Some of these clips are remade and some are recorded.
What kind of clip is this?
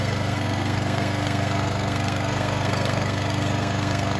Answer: remade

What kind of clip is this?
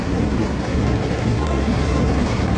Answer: remade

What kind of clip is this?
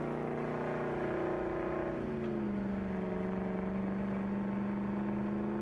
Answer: recorded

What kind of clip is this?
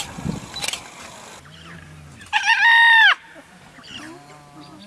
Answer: recorded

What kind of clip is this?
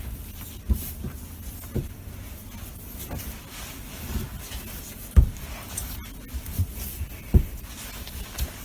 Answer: recorded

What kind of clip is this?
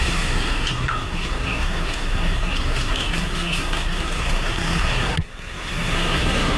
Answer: remade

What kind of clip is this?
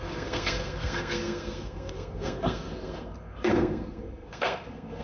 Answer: remade